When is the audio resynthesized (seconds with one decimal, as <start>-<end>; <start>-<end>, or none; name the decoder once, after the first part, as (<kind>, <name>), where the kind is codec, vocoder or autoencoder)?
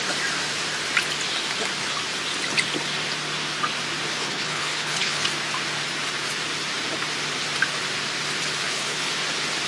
4.1-5.3 (codec, HILCodec); 8.6-9.1